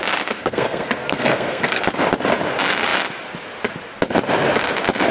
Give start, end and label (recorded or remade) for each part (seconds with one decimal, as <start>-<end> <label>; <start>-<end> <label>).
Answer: 0.0-0.4 recorded; 0.4-1.8 remade; 1.8-5.1 recorded